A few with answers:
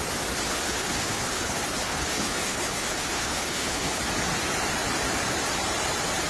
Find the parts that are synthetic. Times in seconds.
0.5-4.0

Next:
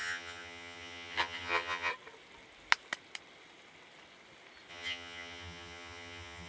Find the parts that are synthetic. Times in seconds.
0.0-1.9; 4.7-6.5

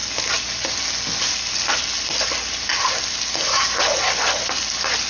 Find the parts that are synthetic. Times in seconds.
none